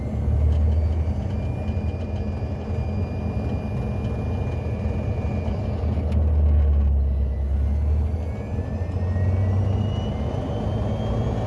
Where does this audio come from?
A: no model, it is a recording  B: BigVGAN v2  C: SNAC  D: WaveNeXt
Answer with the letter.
A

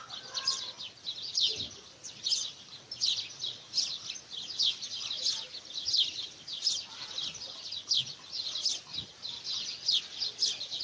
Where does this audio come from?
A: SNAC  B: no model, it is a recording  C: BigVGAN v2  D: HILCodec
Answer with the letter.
B